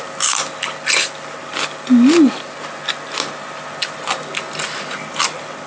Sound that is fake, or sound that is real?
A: real